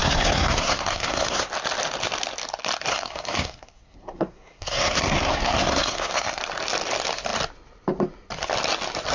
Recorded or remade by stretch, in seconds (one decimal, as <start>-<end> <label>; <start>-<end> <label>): 0.0-1.5 remade; 1.5-2.9 recorded; 2.9-6.4 remade; 6.4-9.1 recorded